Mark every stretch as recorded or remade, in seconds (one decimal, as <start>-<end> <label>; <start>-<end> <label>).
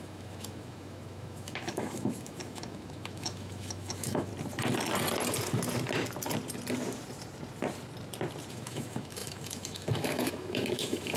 0.0-4.3 remade; 4.3-8.5 recorded; 8.5-11.2 remade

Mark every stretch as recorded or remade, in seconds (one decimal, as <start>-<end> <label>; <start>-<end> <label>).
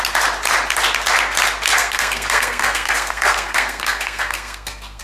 0.0-1.8 recorded; 1.8-5.0 remade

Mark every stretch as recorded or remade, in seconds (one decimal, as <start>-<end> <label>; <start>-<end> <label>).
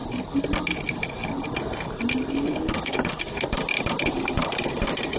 0.0-2.5 recorded; 2.5-3.2 remade; 3.2-5.2 recorded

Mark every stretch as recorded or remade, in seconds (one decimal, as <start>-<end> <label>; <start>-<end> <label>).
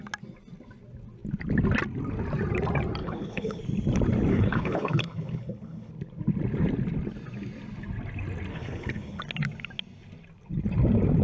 0.0-3.0 recorded; 3.0-3.6 remade; 3.6-4.3 recorded; 4.3-5.9 remade; 5.9-8.5 recorded; 8.5-9.2 remade; 9.2-11.2 recorded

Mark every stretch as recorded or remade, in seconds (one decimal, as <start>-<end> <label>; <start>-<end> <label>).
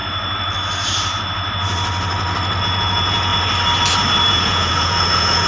0.0-2.6 recorded; 2.6-3.3 remade; 3.3-4.3 recorded; 4.3-5.5 remade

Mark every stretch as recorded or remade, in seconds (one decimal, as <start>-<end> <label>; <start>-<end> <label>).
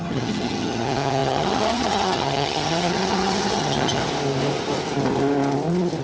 0.0-4.0 remade; 4.0-6.0 recorded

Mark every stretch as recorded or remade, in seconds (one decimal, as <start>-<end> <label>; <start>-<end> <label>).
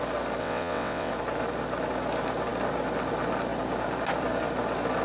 0.0-0.4 recorded; 0.4-1.1 remade; 1.1-5.0 recorded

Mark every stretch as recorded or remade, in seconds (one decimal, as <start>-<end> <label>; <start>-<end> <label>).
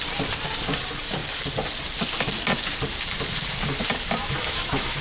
0.0-4.2 recorded; 4.2-5.0 remade